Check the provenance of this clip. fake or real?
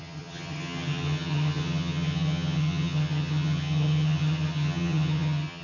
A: fake